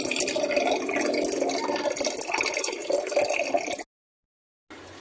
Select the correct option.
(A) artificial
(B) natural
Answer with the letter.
B